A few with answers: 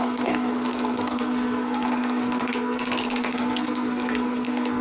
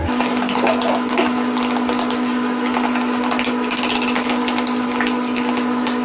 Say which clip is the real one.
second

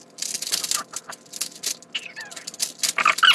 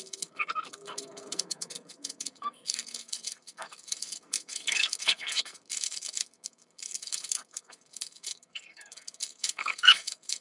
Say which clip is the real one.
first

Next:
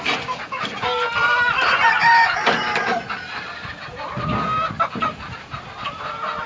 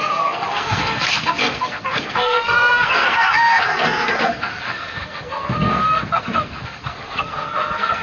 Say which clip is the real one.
first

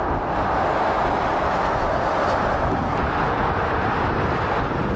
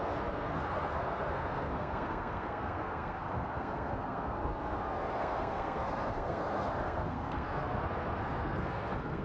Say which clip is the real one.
first